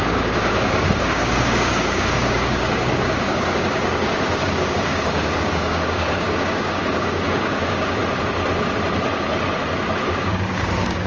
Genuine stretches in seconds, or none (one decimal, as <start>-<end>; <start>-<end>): 8.0-10.1